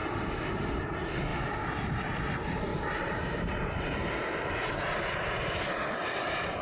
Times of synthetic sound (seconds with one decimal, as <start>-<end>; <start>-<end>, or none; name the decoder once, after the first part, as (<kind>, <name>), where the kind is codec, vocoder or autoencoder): 0.0-0.9 (vocoder, BigVGAN v2); 2.7-4.7